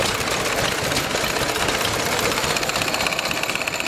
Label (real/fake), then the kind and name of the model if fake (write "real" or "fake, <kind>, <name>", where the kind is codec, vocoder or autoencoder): real